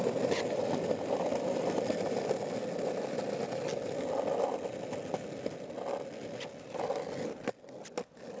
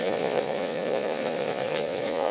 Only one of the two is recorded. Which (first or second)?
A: first